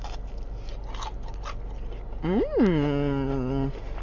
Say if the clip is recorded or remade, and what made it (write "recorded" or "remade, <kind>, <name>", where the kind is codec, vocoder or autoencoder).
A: recorded